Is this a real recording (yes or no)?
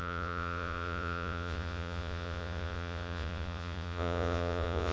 no